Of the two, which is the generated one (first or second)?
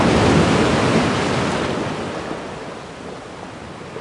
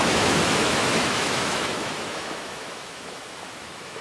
second